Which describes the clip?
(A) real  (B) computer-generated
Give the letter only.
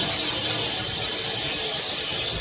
A